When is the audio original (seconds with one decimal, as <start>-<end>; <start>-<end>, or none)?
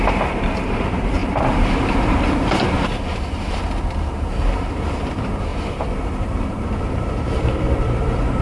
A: 5.5-6.2